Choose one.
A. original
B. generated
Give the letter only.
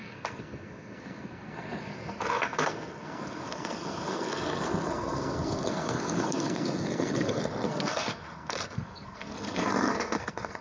B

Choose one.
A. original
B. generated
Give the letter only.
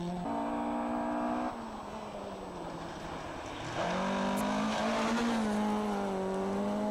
A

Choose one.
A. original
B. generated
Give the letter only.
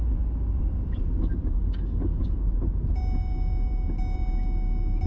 A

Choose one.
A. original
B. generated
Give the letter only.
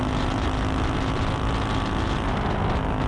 A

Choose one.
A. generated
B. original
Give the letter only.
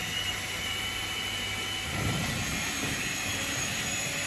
A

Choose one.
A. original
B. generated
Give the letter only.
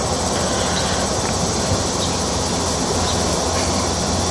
A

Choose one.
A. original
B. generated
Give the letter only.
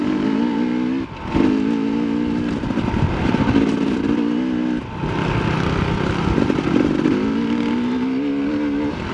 A